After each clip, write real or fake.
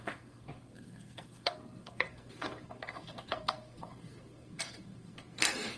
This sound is fake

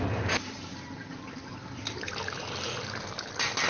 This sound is real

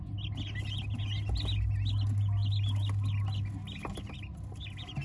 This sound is real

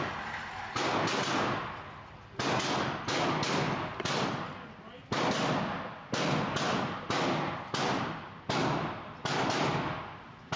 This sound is real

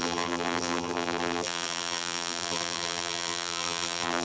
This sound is fake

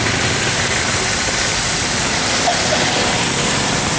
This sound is real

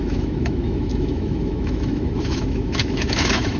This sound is fake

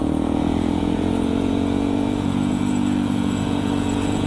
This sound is fake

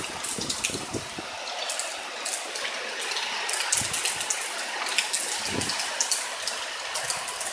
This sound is real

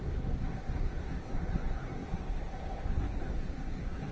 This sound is fake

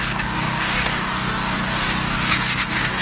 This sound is fake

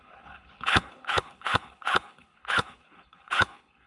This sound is fake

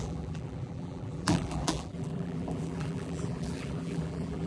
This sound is fake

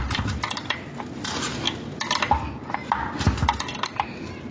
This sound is real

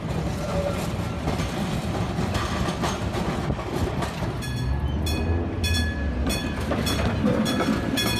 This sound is real